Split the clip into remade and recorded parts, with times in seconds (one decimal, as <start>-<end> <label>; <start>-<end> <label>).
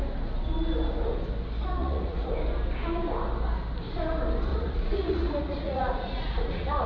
0.0-1.8 recorded; 1.8-2.3 remade; 2.3-4.5 recorded; 4.5-6.9 remade